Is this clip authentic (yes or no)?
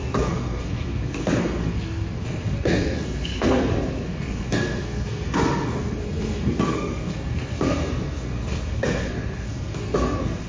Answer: no